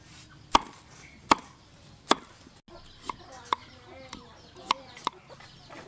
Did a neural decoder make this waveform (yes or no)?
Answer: no